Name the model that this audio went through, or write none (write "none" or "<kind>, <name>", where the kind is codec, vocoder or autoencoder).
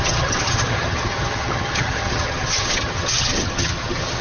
vocoder, HiFi-GAN